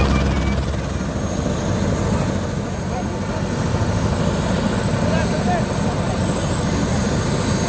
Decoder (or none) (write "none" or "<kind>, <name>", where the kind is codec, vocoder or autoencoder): none